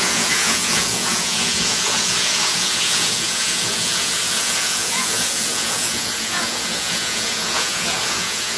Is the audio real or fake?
fake